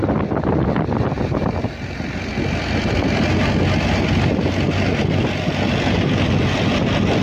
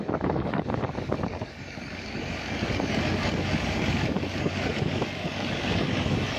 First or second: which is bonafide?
first